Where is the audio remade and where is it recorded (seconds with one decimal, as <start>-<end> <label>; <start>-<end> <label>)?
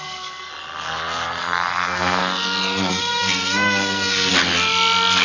0.0-0.5 remade; 0.5-1.4 recorded; 1.4-2.2 remade; 2.2-2.9 recorded; 2.9-4.3 remade; 4.3-5.2 recorded